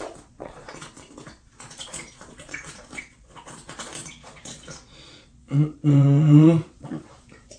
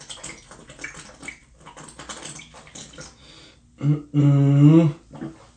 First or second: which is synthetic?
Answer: first